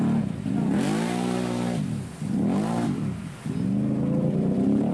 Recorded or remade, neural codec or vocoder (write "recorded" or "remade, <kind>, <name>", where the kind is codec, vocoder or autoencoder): recorded